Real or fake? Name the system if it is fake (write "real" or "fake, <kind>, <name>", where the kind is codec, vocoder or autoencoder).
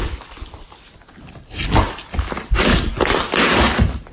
real